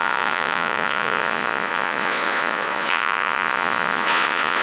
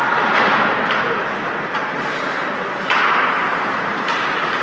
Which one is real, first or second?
second